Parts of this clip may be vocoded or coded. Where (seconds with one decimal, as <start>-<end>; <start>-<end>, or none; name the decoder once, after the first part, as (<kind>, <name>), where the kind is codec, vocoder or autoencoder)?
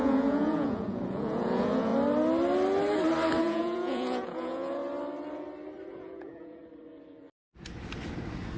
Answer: 0.0-1.9 (vocoder, Vocos); 3.4-4.8; 5.9-6.6